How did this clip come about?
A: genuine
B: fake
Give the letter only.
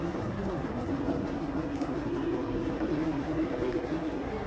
B